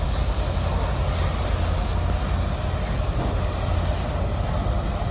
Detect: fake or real real